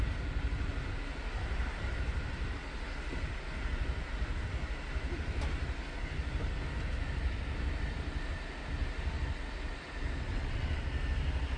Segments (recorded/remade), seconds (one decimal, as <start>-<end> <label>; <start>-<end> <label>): 0.0-10.3 recorded; 10.3-10.8 remade; 10.8-11.6 recorded

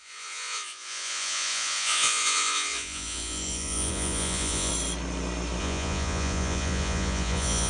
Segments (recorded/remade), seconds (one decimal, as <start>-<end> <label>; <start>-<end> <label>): 0.0-4.7 remade; 4.7-5.6 recorded; 5.6-7.7 remade

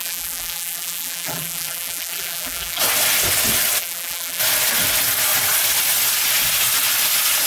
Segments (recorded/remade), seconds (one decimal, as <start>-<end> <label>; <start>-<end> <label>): 0.0-2.8 remade; 2.8-3.8 recorded; 3.8-4.4 remade; 4.4-7.5 recorded

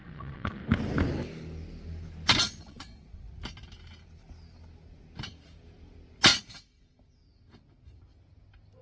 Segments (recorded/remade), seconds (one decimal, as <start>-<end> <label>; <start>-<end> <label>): 0.0-0.6 remade; 0.6-2.6 recorded; 2.6-3.3 remade; 3.3-8.8 recorded